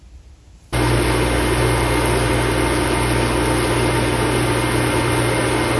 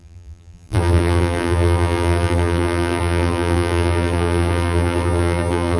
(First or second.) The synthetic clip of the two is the second